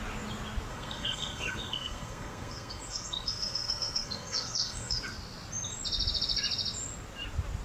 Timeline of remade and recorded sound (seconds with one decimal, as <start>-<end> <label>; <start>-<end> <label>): 0.0-0.7 recorded; 0.7-5.0 remade; 5.0-7.6 recorded